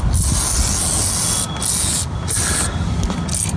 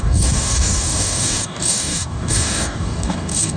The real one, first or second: first